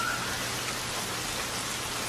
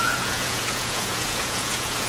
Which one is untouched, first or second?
first